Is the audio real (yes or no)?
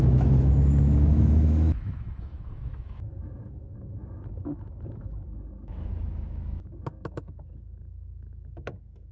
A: no